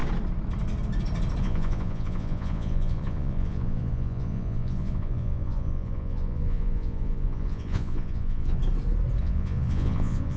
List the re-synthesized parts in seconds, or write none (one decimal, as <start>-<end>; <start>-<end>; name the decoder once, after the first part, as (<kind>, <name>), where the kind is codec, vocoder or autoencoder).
1.4-8.6 (vocoder, Vocos); 9.2-10.4